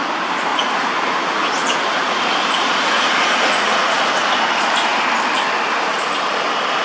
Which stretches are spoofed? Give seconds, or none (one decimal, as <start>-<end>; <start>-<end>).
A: 0.5-4.1